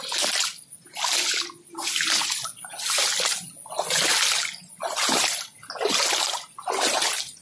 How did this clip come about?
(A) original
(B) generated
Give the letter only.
A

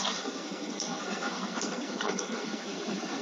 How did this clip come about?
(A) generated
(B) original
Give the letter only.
A